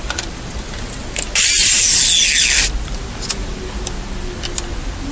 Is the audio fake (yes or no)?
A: no